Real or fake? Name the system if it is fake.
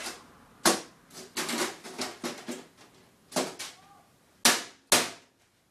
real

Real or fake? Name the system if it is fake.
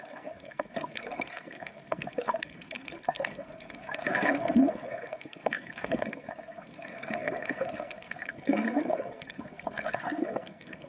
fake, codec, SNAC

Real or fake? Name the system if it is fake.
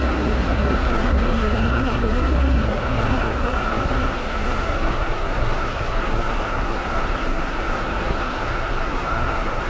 fake, codec, SNAC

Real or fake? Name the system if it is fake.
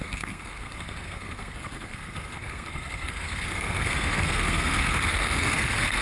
fake, codec, SNAC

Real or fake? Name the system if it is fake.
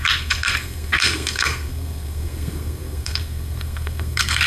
fake, codec, SNAC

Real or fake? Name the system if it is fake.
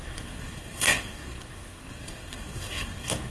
fake, codec, SNAC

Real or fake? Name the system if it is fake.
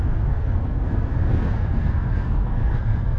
fake, codec, SNAC